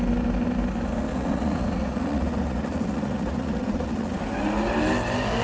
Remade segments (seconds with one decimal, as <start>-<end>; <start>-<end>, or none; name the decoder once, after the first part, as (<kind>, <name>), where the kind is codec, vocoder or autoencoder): 1.1-4.2 (vocoder, Vocos)